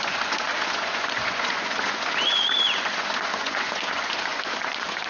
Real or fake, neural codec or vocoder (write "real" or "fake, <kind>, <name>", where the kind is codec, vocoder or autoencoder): fake, vocoder, Vocos